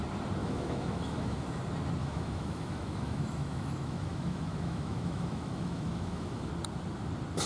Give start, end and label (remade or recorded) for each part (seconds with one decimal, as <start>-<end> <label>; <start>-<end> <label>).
0.0-0.4 recorded; 0.4-1.6 remade; 1.6-2.0 recorded; 2.0-6.5 remade; 6.5-7.5 recorded